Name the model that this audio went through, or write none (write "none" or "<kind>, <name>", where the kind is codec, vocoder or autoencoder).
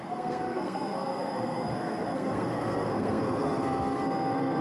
codec, SNAC